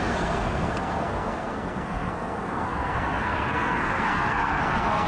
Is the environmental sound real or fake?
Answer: fake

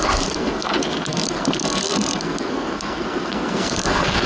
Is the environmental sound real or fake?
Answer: fake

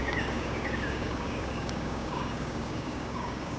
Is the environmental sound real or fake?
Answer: fake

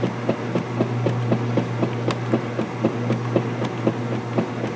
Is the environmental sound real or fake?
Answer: real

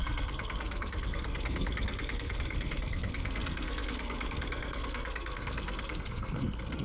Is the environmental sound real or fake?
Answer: fake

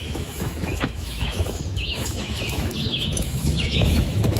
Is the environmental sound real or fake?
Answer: fake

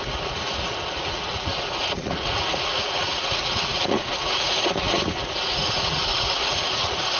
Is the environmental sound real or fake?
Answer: fake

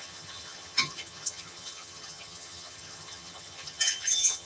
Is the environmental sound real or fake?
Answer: fake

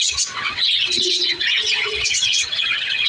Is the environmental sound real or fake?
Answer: fake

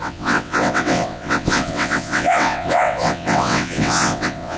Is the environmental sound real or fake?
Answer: fake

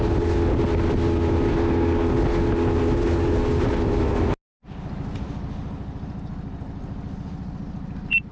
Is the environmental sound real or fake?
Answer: real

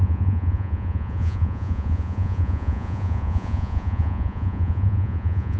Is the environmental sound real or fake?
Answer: fake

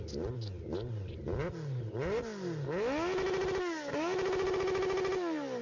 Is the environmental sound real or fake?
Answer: real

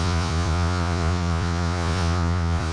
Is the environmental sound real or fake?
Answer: fake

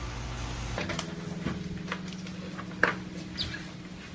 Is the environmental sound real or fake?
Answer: real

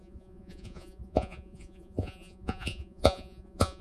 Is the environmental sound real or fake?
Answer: fake